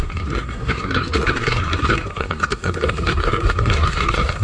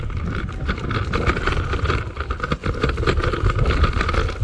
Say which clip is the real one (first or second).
second